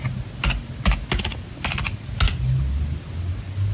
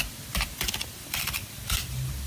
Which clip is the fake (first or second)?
second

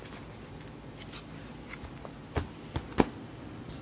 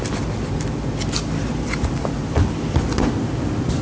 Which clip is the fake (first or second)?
second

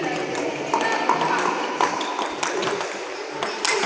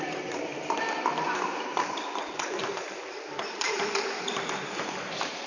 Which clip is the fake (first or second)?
second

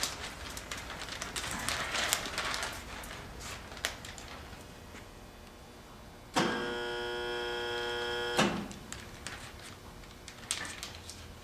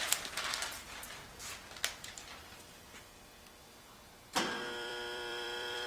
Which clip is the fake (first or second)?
second